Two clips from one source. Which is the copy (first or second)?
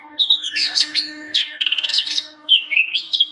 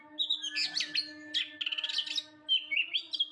first